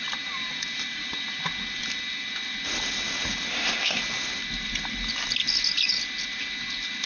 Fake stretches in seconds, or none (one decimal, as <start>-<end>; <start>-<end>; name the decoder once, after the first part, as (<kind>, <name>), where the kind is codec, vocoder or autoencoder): 3.5-4.0 (codec, ZipCodec)